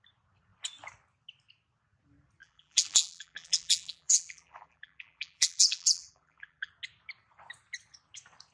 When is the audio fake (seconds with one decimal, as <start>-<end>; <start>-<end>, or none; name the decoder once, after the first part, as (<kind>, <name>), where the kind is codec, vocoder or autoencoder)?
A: 2.4-6.7 (vocoder, BigVGAN v2)